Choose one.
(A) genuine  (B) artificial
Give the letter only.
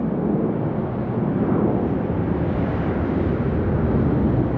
A